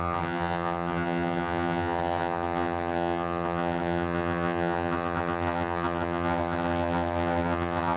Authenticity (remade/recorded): remade